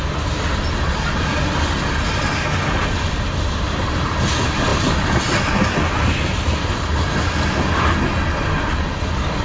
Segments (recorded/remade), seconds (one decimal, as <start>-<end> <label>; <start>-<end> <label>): 0.0-9.4 recorded